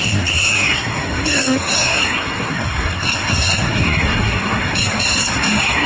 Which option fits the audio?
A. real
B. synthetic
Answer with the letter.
B